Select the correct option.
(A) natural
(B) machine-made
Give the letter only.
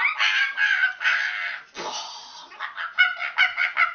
A